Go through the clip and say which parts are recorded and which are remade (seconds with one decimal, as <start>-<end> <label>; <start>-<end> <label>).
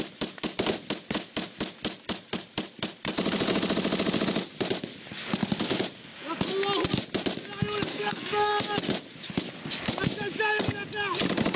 0.0-7.9 recorded; 7.9-8.5 remade; 8.5-11.6 recorded